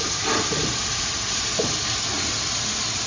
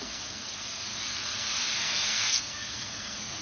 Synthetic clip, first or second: second